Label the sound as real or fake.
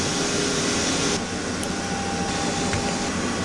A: real